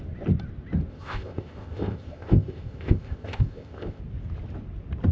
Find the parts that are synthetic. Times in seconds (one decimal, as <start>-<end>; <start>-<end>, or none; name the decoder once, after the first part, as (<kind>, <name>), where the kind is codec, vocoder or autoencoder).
0.9-4.0 (codec, ZipCodec)